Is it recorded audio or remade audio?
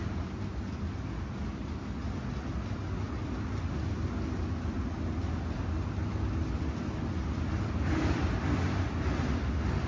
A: recorded